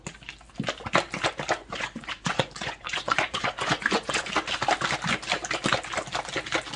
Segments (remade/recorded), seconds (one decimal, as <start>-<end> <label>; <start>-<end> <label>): 0.0-1.6 recorded; 1.6-4.3 remade; 4.3-6.8 recorded